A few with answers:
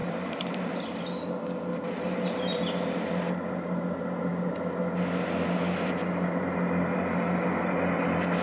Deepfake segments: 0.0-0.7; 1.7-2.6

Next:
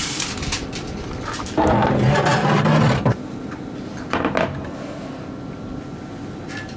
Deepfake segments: 0.0-1.0; 2.3-3.3

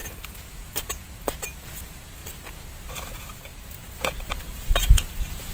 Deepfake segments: 0.0-0.8; 3.5-5.1

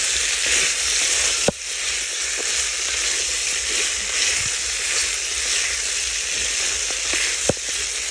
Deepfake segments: none

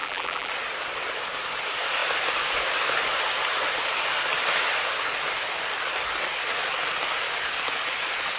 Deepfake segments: 0.0-0.5

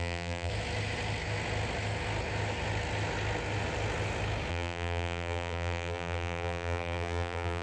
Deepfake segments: 0.0-0.5; 4.5-7.6

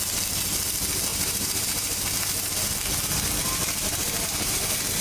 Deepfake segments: 1.1-2.0; 3.4-5.0